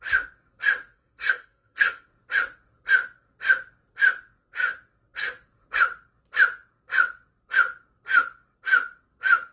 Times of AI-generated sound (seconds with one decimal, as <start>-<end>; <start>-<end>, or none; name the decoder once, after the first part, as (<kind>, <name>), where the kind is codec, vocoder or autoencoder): 0.9-2.1 (codec, SNAC)

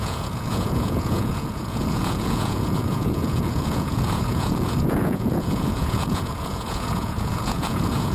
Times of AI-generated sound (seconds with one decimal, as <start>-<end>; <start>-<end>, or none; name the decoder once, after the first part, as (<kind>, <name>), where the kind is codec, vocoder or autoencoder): 0.0-8.1 (vocoder, Vocos)

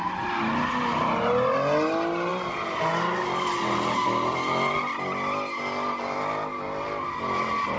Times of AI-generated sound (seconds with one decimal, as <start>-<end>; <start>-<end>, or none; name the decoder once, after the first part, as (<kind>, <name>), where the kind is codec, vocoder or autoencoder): none

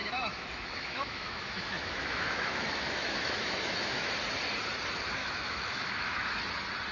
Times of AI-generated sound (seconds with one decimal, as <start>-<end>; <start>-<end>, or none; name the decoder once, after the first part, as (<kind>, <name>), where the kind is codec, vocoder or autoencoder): 0.0-4.1 (autoencoder, DAC-VAE); 5.2-6.4